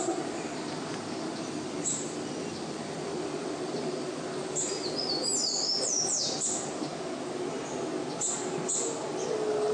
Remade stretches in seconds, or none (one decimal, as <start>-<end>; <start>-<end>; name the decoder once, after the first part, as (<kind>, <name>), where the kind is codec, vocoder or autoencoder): 0.0-6.9 (vocoder, BigVGAN v2)